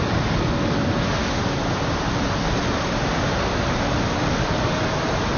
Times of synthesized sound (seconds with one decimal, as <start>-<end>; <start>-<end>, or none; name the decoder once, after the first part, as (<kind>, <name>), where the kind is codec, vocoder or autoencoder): none

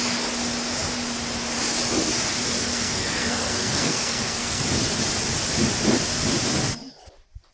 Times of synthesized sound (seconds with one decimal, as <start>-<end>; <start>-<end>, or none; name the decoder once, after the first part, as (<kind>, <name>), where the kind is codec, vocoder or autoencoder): 2.7-4.6 (codec, SNAC)

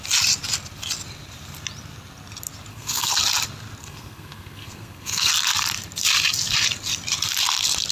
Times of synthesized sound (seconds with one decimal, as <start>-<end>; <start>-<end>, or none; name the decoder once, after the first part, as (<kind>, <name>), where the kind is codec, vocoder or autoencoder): 2.7-3.2 (codec, SNAC); 3.8-5.3

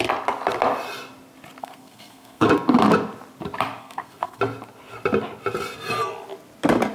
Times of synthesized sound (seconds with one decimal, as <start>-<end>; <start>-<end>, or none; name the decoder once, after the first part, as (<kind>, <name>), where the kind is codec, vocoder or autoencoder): 1.6-2.5 (codec, SNAC); 3.8-4.4

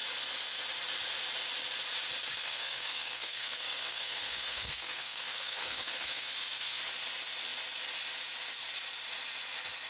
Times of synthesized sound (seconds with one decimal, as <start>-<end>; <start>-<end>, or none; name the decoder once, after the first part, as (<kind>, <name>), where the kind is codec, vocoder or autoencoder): 2.4-6.8 (codec, SNAC)

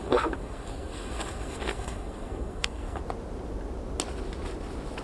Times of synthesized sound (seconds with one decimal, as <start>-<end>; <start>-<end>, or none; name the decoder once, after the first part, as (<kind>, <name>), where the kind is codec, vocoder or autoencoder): 0.0-3.0 (codec, SNAC)